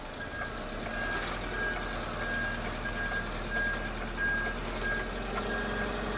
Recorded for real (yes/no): yes